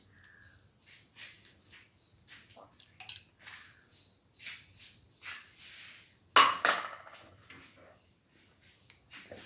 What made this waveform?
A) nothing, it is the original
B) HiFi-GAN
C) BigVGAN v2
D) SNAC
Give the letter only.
A